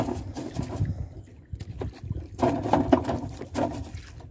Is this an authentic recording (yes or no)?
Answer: yes